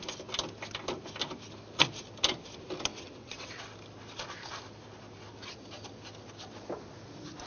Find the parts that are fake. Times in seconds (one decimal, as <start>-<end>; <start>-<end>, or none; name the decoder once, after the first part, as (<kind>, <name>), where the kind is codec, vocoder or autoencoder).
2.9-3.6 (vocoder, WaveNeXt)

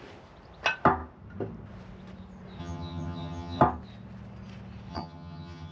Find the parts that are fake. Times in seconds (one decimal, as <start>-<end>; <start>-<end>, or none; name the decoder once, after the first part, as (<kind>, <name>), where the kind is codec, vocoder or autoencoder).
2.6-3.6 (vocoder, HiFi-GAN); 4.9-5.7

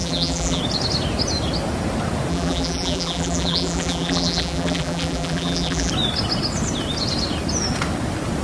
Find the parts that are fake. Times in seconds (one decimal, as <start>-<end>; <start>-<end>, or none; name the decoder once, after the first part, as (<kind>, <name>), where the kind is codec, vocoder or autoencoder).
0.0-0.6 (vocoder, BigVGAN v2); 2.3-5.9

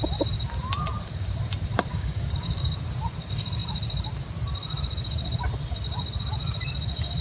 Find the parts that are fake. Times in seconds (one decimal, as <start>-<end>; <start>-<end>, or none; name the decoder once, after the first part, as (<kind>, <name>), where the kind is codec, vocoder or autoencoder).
1.9-2.7 (codec, DAC)

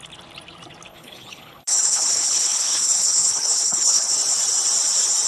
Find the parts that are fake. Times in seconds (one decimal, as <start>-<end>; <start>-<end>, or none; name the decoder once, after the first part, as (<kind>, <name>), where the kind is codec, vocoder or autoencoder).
0.9-4.1 (codec, HILCodec)

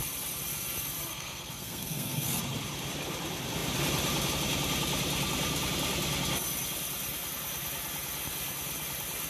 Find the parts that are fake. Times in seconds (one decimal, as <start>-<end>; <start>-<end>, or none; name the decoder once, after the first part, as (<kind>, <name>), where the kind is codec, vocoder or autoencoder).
1.1-2.4 (codec, SNAC)

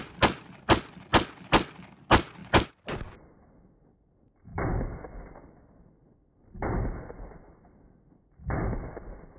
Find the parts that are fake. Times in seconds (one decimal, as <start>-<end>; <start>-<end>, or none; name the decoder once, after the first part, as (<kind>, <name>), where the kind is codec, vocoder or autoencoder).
none

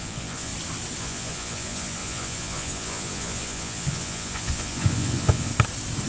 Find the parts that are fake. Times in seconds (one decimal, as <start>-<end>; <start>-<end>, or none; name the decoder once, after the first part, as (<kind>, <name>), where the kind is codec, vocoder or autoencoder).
0.0-0.5 (vocoder, Vocos); 1.0-5.5